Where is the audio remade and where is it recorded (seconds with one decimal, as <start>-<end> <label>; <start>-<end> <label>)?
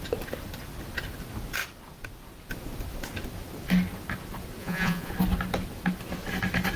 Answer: 0.0-4.6 recorded; 4.6-5.1 remade; 5.1-6.8 recorded